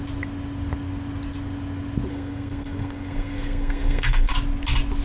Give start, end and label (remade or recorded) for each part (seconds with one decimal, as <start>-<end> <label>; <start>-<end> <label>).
0.0-2.1 recorded; 2.1-4.3 remade; 4.3-5.0 recorded